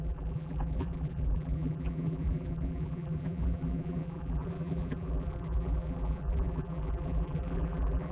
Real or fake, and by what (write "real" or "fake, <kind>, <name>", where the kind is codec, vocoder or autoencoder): fake, vocoder, BigVGAN v2